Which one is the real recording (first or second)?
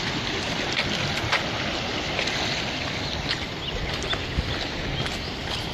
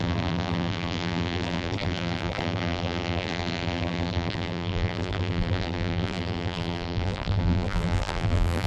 first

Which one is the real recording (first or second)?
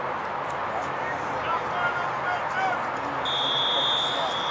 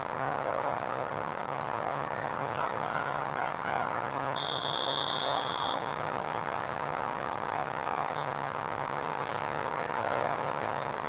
first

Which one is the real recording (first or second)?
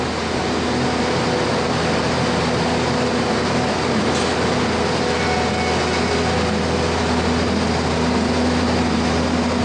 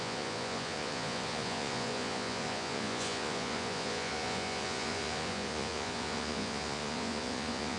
first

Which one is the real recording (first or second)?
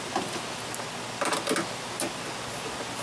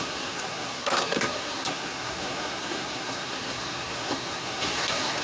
first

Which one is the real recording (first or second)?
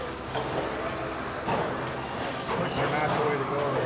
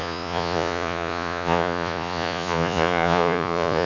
first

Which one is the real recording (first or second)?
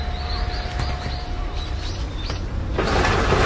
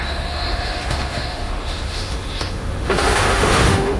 first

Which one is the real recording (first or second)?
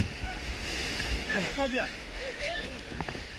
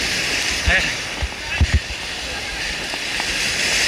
second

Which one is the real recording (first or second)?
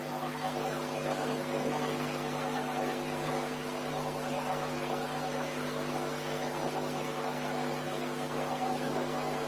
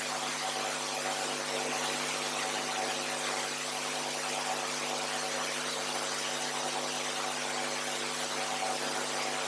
second